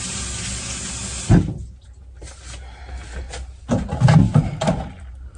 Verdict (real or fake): real